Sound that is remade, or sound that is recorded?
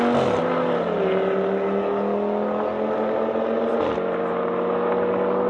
recorded